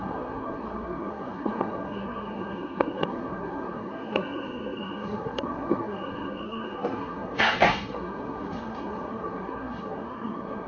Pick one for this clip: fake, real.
fake